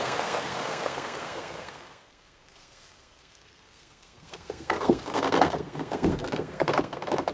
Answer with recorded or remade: remade